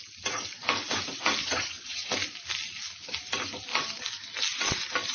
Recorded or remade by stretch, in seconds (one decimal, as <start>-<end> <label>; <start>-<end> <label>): 0.0-1.4 recorded; 1.4-2.1 remade; 2.1-5.1 recorded